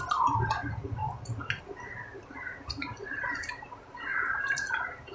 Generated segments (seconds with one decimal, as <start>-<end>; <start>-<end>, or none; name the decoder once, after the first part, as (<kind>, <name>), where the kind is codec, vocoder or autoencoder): 2.1-5.1 (vocoder, BigVGAN v2)